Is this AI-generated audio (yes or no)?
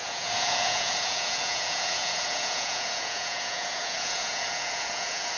yes